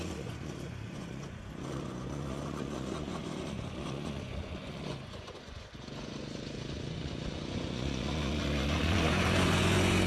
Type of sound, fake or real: fake